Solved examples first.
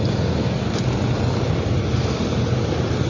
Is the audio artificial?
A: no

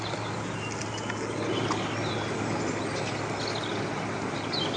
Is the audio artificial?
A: no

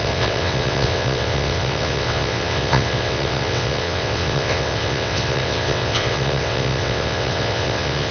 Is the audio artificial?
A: yes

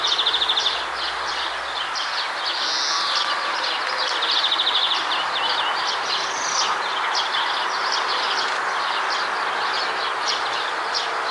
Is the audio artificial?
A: no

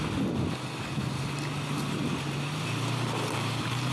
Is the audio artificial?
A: no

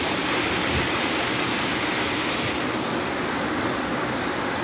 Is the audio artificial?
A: yes